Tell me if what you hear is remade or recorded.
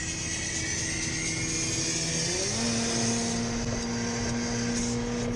recorded